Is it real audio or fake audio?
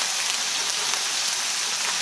real